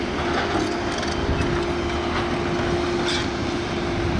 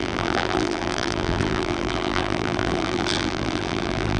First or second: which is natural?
first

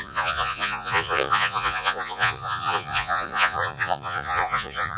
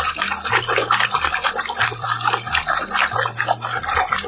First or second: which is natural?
second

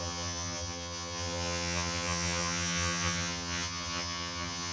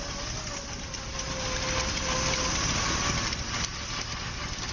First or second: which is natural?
second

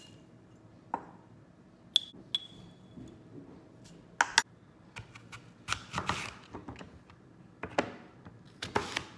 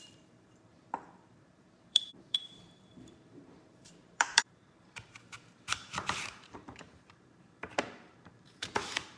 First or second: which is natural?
first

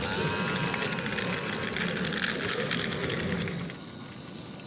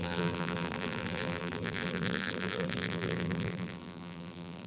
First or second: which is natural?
first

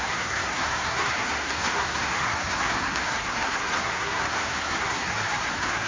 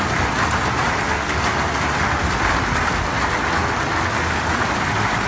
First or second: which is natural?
second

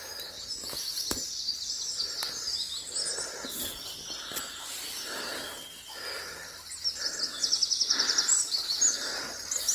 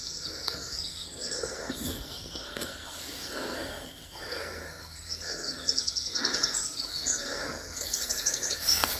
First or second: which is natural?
first